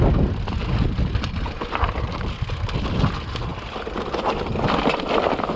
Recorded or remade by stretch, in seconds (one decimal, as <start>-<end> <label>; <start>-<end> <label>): 0.0-5.6 recorded